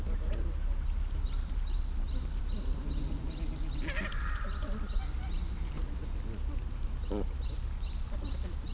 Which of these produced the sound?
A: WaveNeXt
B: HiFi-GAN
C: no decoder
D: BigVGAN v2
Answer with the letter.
C